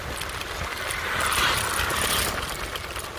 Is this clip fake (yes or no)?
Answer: yes